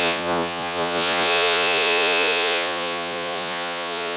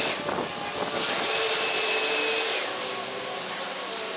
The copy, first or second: first